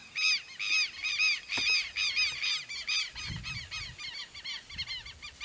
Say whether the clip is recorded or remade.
recorded